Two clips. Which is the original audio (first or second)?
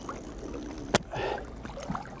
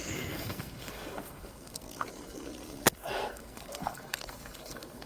first